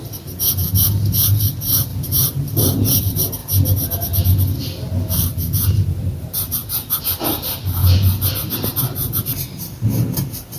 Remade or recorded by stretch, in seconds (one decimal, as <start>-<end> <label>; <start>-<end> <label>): 0.0-1.9 recorded; 1.9-3.0 remade; 3.0-10.6 recorded